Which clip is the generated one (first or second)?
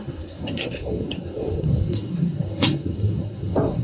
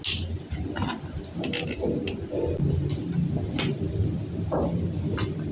first